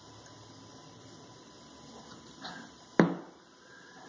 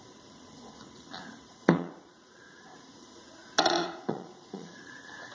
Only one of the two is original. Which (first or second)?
first